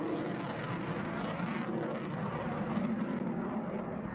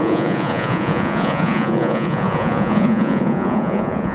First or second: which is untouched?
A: first